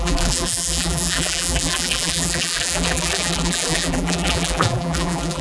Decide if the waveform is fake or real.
fake